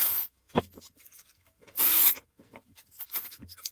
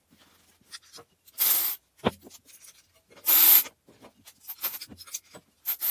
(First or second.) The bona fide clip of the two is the second